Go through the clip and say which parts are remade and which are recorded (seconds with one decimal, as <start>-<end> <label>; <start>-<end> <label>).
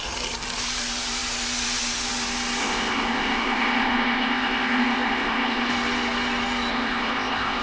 0.0-2.6 recorded; 2.6-5.7 remade; 5.7-6.7 recorded; 6.7-7.6 remade